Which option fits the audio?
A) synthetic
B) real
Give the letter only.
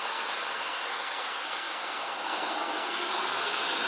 A